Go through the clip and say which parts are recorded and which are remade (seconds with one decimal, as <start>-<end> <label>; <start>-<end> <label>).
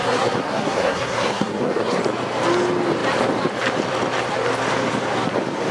0.0-2.0 remade; 2.0-5.7 recorded